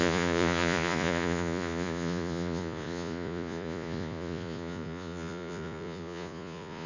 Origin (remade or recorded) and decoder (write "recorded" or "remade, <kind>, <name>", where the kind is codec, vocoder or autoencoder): remade, vocoder, Vocos